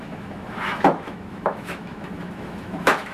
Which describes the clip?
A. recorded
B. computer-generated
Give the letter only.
B